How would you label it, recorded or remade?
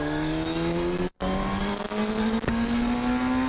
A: recorded